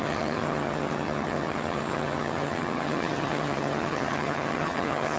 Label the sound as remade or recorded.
remade